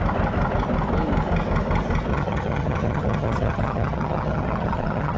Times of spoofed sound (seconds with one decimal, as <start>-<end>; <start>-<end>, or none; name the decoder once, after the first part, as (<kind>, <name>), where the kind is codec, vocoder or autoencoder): 2.1-5.2 (vocoder, HiFi-GAN)